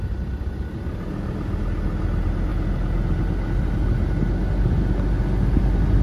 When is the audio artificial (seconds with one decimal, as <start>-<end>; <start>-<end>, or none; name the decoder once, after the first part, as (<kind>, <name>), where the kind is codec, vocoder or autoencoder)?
none